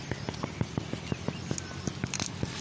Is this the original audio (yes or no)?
yes